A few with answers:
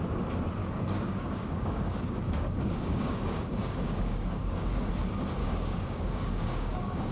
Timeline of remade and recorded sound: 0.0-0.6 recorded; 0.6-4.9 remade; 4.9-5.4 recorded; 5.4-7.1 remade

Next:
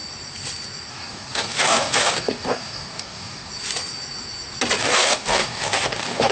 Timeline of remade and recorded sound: 0.0-0.9 recorded; 0.9-3.5 remade; 3.5-4.8 recorded; 4.8-6.3 remade

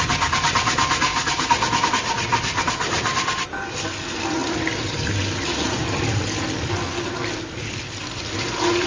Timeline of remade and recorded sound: 0.0-8.9 recorded